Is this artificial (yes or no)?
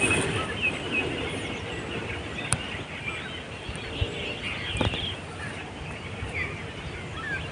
no